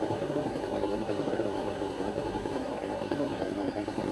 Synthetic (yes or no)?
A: yes